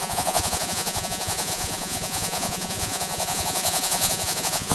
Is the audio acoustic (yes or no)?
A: no